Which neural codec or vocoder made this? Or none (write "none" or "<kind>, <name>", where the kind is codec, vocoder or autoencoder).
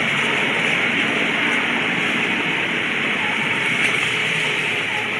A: none